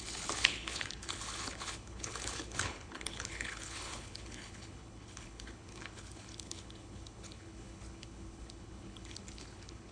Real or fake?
fake